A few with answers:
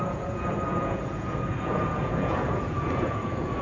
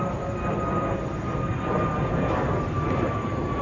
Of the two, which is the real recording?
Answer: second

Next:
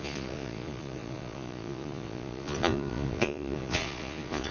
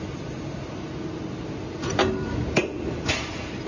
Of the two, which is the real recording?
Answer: second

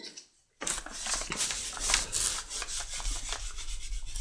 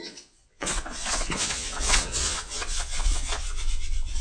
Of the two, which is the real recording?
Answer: first